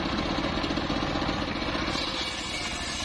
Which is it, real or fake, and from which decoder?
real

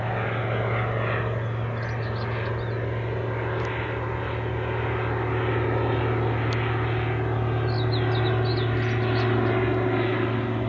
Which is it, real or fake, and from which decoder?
real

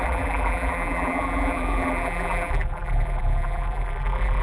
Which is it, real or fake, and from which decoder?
fake, vocoder, BigVGAN v2